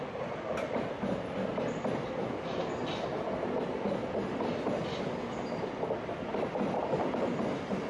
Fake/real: real